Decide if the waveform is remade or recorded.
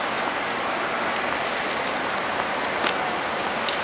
recorded